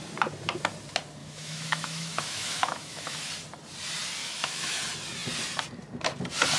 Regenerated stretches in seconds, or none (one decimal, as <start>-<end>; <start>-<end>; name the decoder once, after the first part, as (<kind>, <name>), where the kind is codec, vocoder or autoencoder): 1.2-3.3 (autoencoder, DAC-VAE); 4.2-4.8

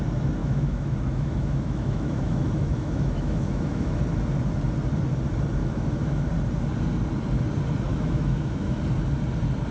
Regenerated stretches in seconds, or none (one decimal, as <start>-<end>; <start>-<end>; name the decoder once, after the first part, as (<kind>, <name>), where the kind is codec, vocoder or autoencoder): 0.4-4.0 (autoencoder, DAC-VAE); 5.6-6.3; 7.9-8.8